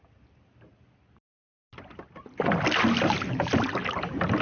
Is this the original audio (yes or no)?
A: yes